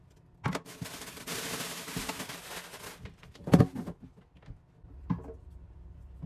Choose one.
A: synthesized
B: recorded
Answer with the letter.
B